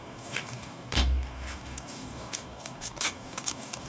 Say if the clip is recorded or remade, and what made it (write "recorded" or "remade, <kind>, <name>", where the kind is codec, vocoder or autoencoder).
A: remade, codec, DAC